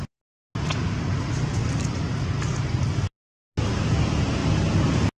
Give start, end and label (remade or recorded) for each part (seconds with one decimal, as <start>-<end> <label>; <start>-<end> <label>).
0.0-5.2 recorded

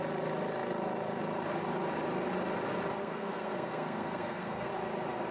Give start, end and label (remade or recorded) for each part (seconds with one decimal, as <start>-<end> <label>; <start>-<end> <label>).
0.0-3.0 recorded; 3.0-4.7 remade; 4.7-5.3 recorded

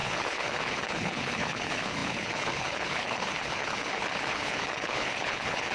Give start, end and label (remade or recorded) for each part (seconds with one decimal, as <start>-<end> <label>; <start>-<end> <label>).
0.0-5.7 remade

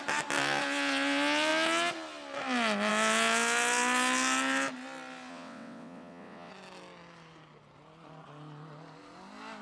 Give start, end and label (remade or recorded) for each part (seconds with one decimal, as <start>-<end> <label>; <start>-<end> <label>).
0.0-5.3 recorded; 5.3-6.5 remade; 6.5-9.6 recorded

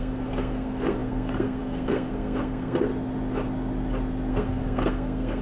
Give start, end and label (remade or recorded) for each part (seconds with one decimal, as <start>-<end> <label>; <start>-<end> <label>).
0.0-2.9 remade; 2.9-4.3 recorded; 4.3-5.4 remade